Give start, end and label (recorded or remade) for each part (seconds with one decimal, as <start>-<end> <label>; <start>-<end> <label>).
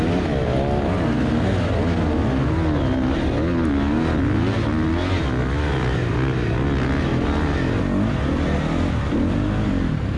0.0-10.2 recorded